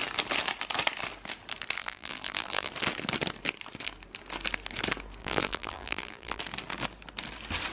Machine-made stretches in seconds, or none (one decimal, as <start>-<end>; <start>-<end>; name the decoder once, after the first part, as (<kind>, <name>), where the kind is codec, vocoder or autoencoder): 1.8-2.7 (vocoder, BigVGAN v2); 5.2-6.4